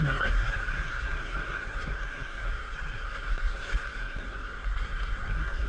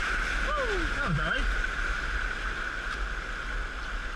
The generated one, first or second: first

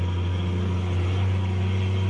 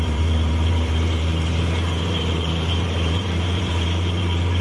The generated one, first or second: second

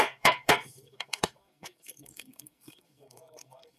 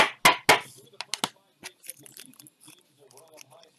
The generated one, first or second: first